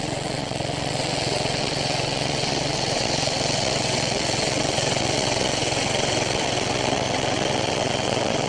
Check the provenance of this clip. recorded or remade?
remade